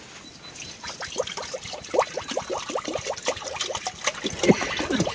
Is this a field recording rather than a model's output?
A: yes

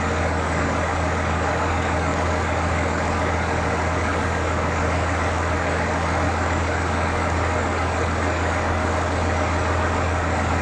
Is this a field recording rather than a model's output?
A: no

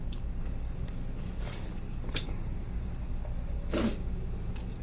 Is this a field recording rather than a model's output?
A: no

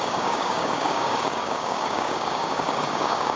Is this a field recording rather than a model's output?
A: no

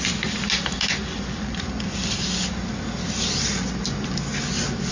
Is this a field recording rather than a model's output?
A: yes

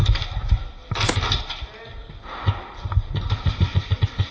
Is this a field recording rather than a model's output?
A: yes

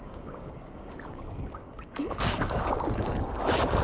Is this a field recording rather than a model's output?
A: no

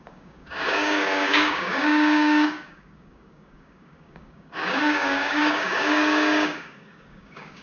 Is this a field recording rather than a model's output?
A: no